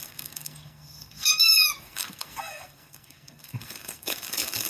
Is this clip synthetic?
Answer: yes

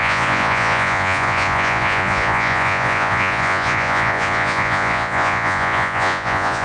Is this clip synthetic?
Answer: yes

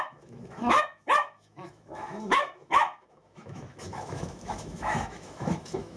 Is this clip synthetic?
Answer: yes